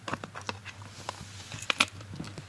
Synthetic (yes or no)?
no